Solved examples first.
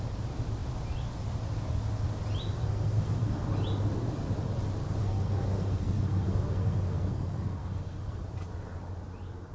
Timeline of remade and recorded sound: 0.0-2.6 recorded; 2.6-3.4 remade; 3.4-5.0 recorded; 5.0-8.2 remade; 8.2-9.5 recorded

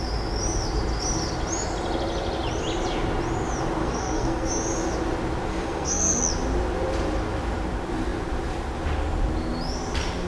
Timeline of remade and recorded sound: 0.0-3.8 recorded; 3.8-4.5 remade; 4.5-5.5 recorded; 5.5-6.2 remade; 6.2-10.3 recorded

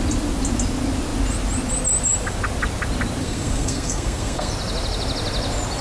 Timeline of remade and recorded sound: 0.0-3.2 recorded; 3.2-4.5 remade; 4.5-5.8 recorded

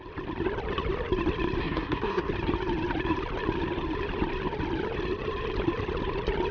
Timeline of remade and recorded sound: 0.0-1.6 recorded; 1.6-2.3 remade; 2.3-6.5 recorded

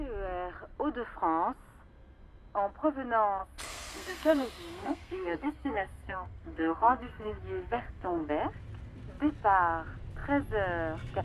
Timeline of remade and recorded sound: 0.0-3.4 recorded; 3.4-8.3 remade; 8.3-11.2 recorded